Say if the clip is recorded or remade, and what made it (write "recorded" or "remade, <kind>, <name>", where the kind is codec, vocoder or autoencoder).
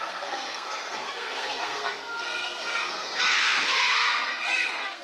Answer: remade, codec, SNAC